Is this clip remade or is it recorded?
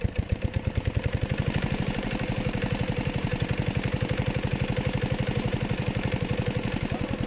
remade